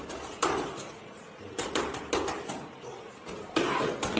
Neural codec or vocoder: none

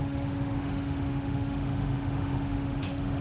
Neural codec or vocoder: autoencoder, DAC-VAE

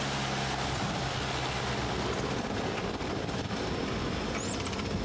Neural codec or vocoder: none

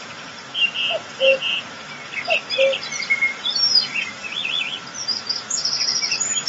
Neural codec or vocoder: none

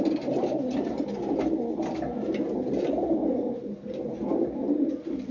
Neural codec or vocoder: none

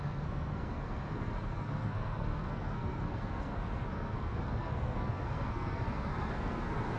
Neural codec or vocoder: codec, SNAC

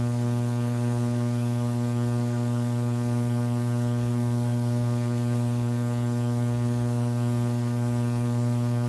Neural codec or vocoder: codec, SNAC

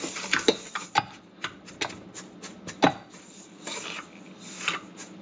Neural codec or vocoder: none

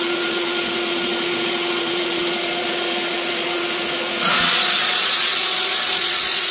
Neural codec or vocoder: vocoder, Vocos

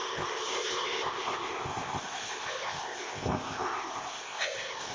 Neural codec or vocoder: codec, ZipCodec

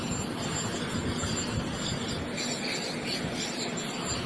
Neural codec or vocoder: none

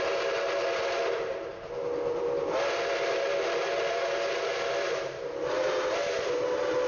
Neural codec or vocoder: none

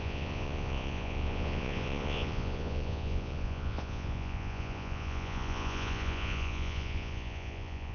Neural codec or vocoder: vocoder, Vocos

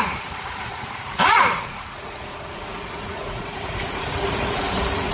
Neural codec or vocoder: vocoder, Vocos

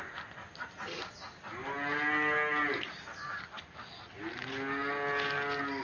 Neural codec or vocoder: none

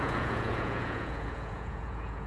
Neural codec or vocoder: vocoder, Vocos